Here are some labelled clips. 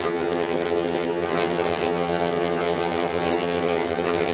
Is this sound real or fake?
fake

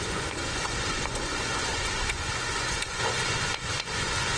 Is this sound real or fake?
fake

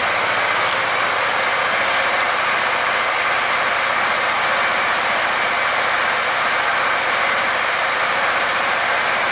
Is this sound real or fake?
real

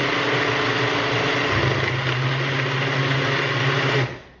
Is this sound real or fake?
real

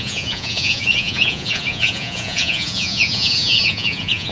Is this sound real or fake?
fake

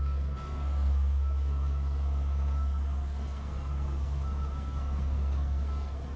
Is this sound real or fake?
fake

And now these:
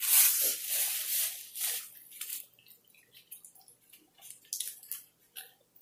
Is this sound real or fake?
real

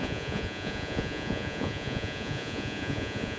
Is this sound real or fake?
fake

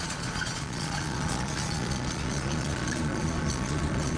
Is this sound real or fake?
fake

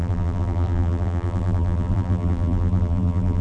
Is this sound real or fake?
fake